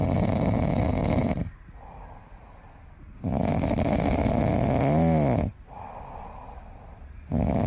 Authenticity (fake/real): real